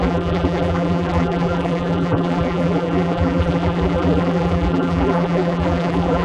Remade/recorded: remade